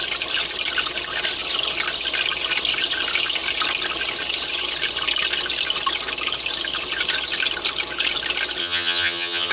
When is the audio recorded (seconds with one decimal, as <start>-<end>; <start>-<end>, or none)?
0.0-8.6